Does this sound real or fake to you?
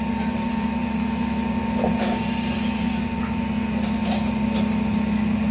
real